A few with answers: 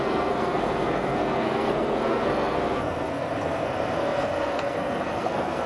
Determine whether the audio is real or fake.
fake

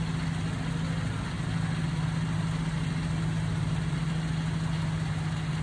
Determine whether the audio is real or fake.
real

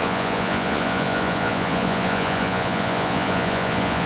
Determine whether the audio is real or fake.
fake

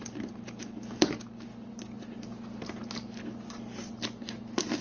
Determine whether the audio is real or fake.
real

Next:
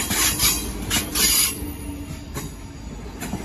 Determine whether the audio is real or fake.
real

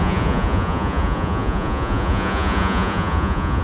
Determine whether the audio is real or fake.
fake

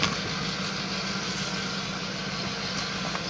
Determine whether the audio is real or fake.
real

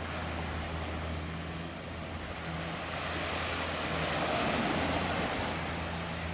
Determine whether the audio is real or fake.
real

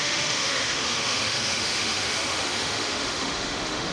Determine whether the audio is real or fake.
fake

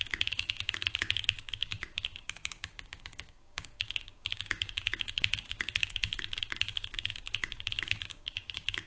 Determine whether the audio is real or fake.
fake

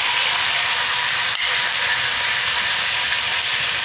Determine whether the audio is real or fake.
real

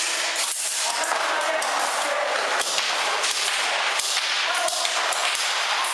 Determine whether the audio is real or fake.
fake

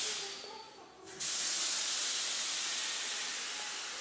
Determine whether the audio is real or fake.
real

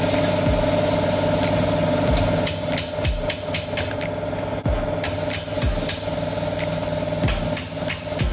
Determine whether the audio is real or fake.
real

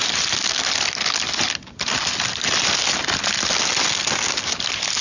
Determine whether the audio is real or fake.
real